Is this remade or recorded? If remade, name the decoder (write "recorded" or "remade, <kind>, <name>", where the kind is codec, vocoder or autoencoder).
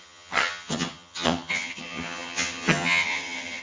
remade, vocoder, HiFi-GAN